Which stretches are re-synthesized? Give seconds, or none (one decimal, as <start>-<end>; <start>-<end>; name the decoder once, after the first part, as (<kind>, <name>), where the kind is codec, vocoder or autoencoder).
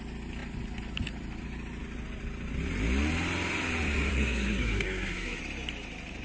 4.1-5.4 (codec, SNAC)